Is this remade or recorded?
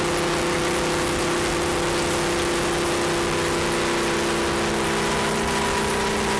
recorded